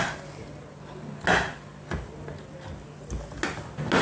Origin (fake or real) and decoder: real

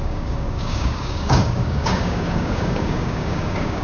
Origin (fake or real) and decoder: fake, codec, DAC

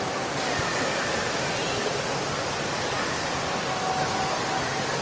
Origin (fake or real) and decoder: real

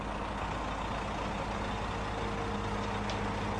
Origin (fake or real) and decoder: real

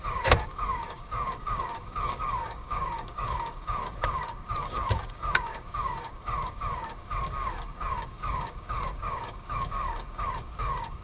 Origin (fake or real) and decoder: fake, codec, DAC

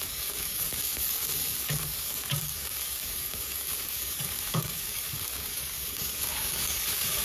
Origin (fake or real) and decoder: fake, codec, DAC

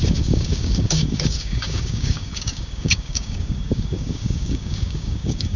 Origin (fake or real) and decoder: fake, codec, DAC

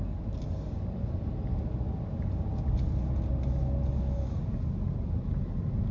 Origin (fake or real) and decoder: real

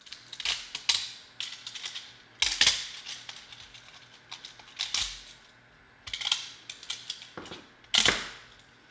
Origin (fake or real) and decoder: real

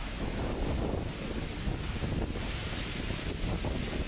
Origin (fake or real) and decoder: real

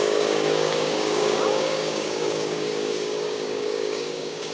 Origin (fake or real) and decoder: fake, codec, DAC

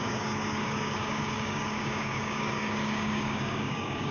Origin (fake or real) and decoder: fake, codec, DAC